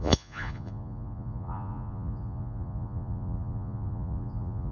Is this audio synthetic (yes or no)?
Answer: yes